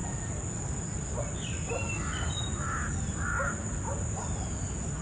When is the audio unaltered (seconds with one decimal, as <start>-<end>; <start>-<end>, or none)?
0.0-5.0